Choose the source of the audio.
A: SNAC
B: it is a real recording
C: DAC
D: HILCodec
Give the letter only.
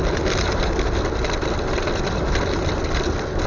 B